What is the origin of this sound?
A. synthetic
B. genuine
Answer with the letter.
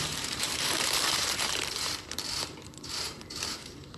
A